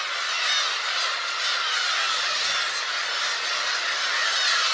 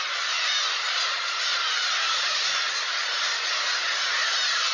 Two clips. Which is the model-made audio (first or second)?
second